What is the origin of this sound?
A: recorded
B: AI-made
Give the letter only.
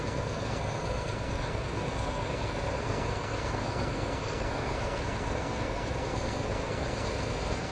B